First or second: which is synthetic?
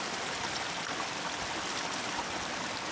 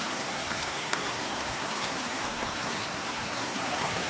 second